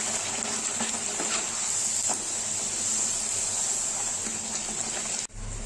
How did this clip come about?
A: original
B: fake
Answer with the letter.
A